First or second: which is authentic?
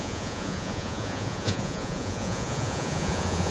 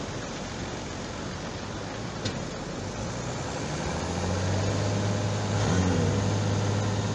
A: second